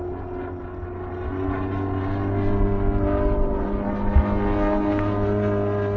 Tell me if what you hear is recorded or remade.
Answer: recorded